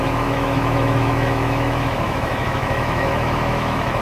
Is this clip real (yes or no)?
no